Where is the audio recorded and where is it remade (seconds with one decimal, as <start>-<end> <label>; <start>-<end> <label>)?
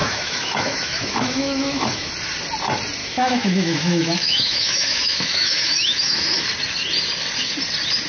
0.0-2.1 remade; 2.1-3.0 recorded; 3.0-6.4 remade; 6.4-8.1 recorded